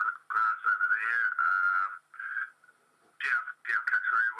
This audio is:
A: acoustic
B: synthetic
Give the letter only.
A